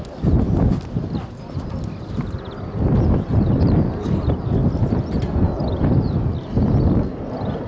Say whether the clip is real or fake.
real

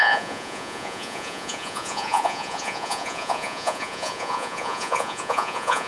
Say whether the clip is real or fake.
fake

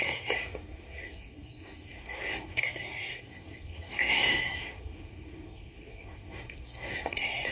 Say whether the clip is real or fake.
fake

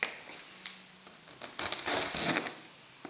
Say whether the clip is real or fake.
real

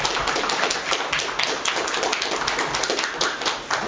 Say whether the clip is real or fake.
real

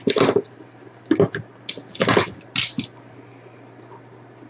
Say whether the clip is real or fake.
real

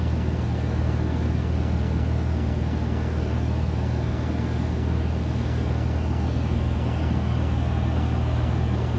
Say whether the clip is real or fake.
fake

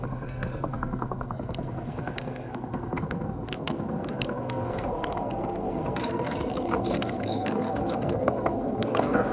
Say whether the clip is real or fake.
fake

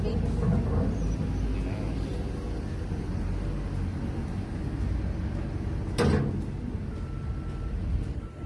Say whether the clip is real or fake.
real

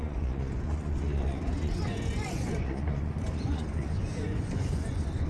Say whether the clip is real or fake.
fake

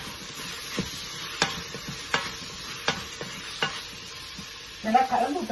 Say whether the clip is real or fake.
real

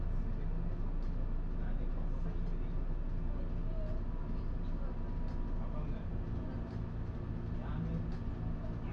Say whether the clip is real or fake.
real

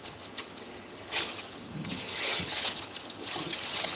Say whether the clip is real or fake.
fake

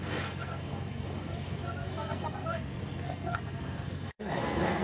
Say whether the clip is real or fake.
fake